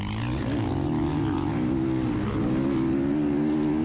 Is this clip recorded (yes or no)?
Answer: yes